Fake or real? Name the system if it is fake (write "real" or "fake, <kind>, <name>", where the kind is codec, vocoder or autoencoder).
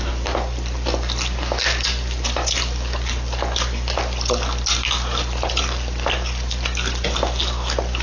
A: real